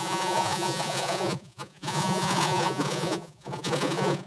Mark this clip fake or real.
fake